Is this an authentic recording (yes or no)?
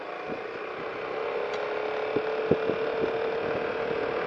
yes